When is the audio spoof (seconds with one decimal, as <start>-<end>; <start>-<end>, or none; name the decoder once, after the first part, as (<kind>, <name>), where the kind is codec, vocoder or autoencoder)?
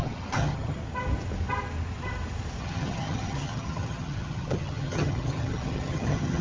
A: 0.0-0.8 (vocoder, HiFi-GAN); 2.6-6.4